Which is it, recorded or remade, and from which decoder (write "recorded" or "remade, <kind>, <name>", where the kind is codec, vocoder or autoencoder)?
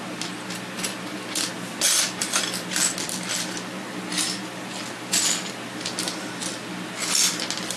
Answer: recorded